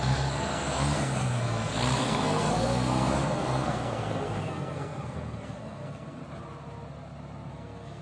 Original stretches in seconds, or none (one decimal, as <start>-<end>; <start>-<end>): 6.2-7.5